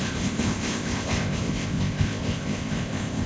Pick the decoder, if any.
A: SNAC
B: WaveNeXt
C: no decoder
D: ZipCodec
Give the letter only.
D